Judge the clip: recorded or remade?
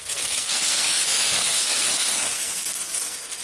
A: remade